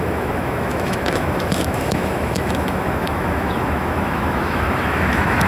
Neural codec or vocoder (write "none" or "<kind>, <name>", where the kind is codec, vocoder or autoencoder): autoencoder, DAC-VAE